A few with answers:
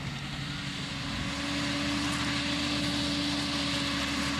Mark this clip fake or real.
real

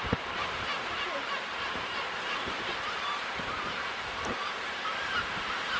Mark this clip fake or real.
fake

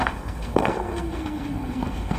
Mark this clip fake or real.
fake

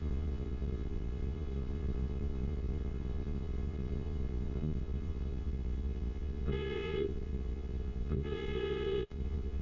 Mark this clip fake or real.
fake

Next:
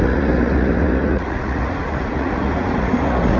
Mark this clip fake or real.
fake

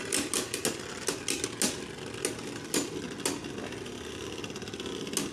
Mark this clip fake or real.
real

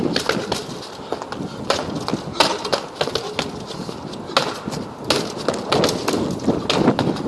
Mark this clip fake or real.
real